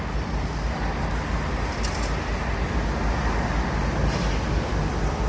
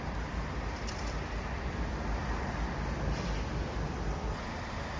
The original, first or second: first